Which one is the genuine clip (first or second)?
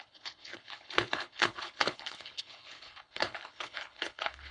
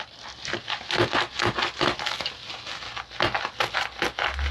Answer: second